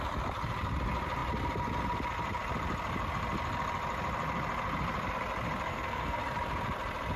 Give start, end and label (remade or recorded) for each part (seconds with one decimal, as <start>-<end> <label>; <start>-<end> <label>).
0.0-5.7 recorded; 5.7-6.2 remade; 6.2-7.2 recorded